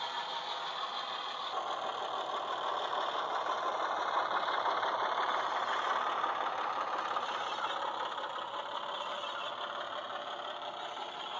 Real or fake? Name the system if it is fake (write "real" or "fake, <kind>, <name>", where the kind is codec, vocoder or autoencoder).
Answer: real